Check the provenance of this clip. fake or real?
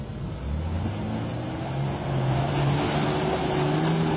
real